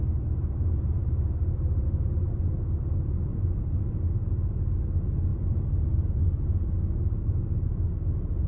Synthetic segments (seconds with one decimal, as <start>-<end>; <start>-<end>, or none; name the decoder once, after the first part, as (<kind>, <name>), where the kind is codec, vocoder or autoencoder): 3.3-3.8 (vocoder, BigVGAN v2); 5.3-5.8